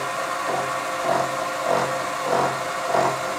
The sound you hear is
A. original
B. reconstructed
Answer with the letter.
A